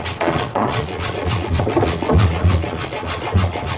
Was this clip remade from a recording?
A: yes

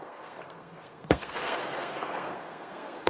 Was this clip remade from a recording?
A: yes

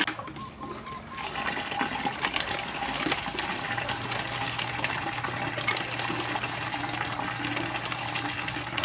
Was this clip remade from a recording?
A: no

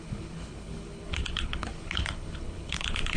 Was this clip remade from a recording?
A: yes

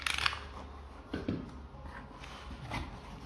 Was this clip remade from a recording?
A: no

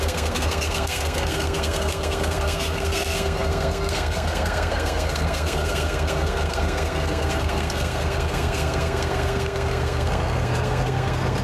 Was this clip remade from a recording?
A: yes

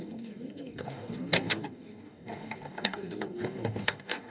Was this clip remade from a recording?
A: yes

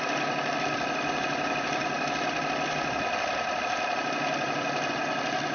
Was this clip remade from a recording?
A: no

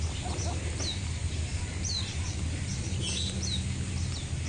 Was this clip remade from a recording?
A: no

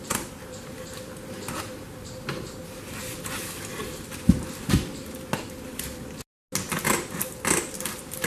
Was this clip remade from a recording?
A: no